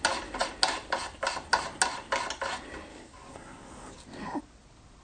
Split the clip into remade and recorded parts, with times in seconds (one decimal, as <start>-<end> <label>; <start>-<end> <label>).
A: 0.0-2.9 recorded; 2.9-3.9 remade; 3.9-5.0 recorded